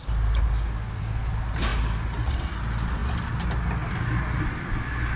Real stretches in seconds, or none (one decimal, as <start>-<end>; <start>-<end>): 0.0-5.2